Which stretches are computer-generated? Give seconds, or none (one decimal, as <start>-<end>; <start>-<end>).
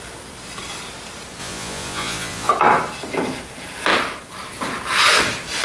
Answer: 1.4-2.5